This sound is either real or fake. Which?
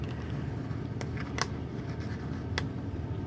real